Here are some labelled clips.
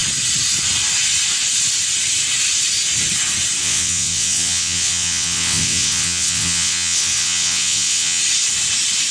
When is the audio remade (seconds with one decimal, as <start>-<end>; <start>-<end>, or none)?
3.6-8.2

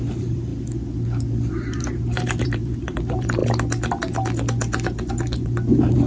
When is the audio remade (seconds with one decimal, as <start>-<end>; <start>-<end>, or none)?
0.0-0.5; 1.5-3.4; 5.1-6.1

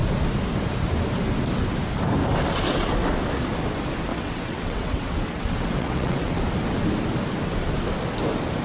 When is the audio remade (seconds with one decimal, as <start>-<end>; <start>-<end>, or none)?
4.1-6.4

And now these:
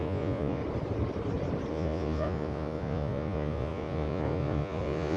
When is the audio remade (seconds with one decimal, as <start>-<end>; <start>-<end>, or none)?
0.0-0.6; 1.7-5.2

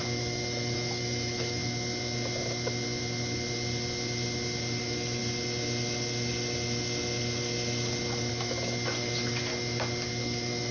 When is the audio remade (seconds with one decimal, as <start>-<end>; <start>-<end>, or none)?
0.0-1.6; 4.8-5.2; 8.3-9.5; 10.1-10.7